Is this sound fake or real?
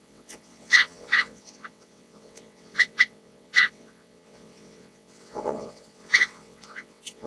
fake